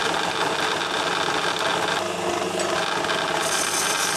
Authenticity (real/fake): real